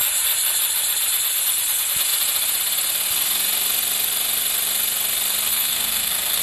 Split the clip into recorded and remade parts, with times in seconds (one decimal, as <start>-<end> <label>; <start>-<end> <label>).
0.0-5.5 recorded; 5.5-6.4 remade